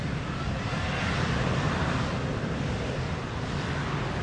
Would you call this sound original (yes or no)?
yes